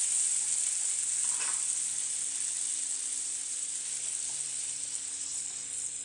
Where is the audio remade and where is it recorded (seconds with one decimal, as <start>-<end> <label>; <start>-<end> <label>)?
0.0-3.1 recorded; 3.1-3.7 remade; 3.7-6.0 recorded